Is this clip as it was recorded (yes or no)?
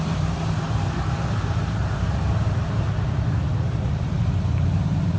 no